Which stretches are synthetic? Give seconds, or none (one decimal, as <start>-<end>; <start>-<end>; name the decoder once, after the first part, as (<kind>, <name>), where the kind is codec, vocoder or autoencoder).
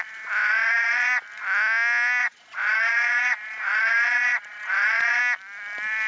0.4-1.2 (vocoder, Vocos); 2.2-5.2